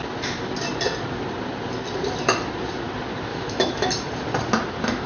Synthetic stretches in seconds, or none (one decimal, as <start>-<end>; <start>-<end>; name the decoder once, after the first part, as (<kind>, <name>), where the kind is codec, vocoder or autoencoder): 3.3-3.9 (autoencoder, DAC-VAE)